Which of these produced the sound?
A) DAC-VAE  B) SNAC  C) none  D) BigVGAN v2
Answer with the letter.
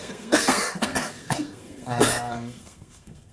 B